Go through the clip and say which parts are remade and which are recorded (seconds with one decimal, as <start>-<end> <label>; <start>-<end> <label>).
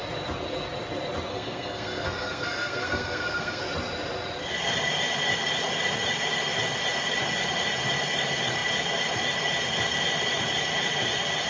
0.0-1.3 recorded; 1.3-3.6 remade; 3.6-11.5 recorded